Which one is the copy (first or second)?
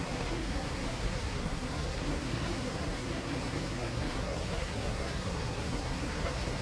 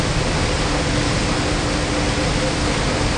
first